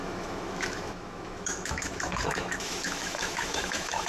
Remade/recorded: remade